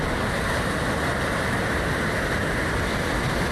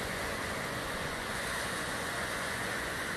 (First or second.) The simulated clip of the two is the second